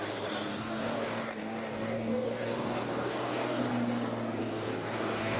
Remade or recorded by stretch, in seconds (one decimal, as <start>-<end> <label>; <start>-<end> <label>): 0.0-0.5 recorded; 0.5-3.7 remade; 3.7-4.4 recorded; 4.4-5.4 remade